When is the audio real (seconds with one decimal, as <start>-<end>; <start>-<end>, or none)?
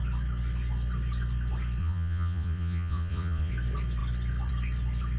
0.0-1.8; 3.5-5.2